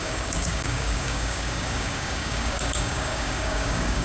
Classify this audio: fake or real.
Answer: fake